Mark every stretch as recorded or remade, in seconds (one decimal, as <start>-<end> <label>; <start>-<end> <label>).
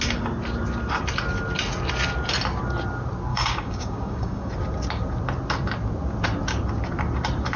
0.0-3.3 recorded; 3.3-4.5 remade; 4.5-7.6 recorded